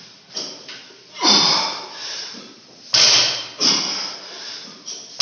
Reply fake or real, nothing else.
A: real